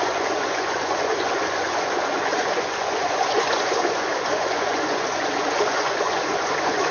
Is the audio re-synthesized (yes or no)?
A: yes